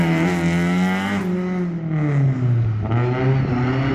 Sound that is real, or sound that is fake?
real